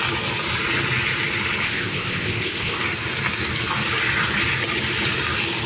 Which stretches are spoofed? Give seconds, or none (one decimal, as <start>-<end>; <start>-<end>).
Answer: 1.6-2.8